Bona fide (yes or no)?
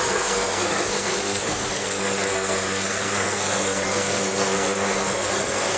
no